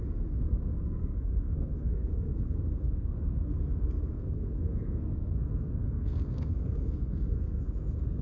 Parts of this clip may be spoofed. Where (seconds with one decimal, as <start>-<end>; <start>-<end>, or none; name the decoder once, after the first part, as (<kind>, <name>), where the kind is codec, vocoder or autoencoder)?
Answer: 0.0-8.2 (codec, SNAC)

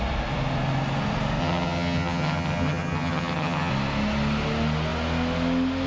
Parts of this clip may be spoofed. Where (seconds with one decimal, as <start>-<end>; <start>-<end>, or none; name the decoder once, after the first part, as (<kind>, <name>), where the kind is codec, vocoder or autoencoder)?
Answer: 1.4-3.7 (vocoder, HiFi-GAN)

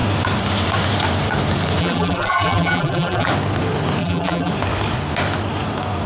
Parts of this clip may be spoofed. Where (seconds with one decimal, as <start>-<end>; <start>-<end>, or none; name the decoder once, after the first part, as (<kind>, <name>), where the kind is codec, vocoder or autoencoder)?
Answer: 1.8-3.3 (vocoder, BigVGAN v2); 4.0-4.5

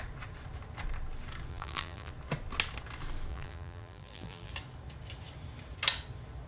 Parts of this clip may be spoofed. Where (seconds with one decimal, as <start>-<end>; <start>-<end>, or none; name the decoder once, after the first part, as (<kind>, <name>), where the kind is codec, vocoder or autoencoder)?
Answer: 1.5-2.1 (vocoder, BigVGAN v2); 3.3-4.5

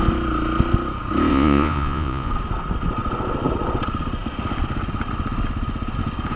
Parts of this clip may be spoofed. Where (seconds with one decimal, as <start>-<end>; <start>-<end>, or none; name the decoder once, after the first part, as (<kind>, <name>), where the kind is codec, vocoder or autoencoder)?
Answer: 1.3-2.3 (vocoder, Vocos)